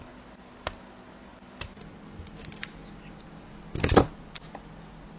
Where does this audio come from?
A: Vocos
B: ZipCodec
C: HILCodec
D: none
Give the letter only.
D